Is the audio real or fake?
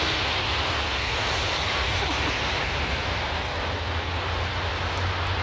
real